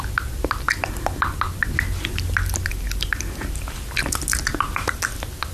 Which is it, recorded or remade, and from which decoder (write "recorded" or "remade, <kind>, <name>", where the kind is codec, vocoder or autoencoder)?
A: recorded